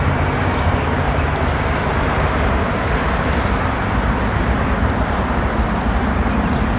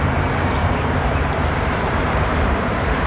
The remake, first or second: second